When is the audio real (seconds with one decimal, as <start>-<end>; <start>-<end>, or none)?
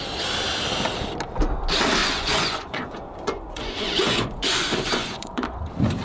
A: 0.0-2.0; 5.6-6.0